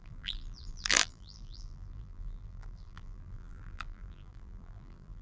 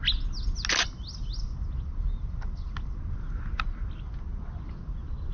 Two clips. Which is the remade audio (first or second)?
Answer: first